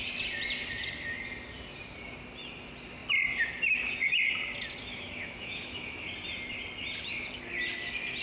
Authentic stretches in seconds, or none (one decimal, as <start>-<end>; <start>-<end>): 0.0-4.8; 6.1-8.2